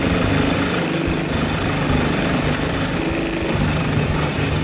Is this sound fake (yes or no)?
no